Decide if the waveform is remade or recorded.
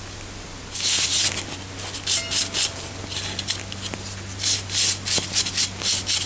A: recorded